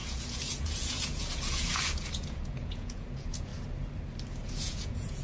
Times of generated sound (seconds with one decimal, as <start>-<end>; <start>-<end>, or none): 0.0-3.5; 4.5-5.2